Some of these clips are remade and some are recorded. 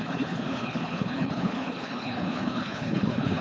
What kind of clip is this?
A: remade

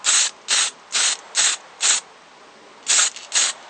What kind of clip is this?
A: recorded